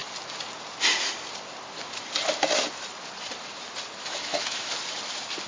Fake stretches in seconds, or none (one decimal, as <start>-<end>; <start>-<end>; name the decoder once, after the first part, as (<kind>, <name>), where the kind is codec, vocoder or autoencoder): 4.0-4.7 (autoencoder, DAC-VAE)

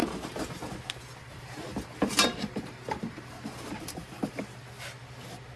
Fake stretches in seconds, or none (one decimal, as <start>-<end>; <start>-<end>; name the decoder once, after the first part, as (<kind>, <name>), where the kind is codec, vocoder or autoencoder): 1.2-4.6 (vocoder, BigVGAN v2)

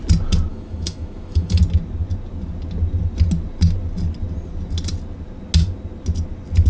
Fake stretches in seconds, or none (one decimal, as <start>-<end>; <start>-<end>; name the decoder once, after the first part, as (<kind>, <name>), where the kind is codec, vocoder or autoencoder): 0.5-1.6 (autoencoder, DAC-VAE)

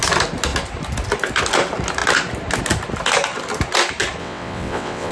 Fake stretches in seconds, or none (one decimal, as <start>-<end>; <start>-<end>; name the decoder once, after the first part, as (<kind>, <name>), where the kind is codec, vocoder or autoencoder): 4.2-5.1 (vocoder, WaveNeXt)

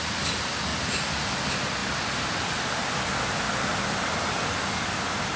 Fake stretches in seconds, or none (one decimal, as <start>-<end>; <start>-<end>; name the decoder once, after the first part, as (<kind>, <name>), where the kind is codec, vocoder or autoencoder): none

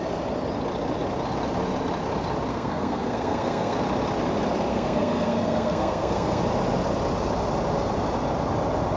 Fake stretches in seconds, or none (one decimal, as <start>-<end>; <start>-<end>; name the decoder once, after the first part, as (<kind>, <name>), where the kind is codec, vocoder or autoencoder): 2.5-3.8 (codec, SNAC); 4.7-6.4

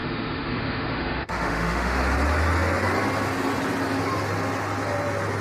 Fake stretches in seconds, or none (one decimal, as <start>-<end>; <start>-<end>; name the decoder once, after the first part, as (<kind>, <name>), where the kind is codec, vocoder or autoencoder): 0.0-2.0 (autoencoder, DAC-VAE)

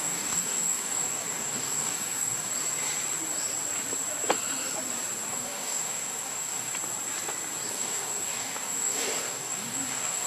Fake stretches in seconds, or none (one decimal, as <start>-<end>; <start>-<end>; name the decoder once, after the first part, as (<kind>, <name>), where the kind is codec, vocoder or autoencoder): 0.0-2.5 (codec, DAC); 5.3-6.7; 7.7-10.3